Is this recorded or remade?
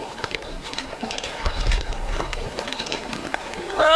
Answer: remade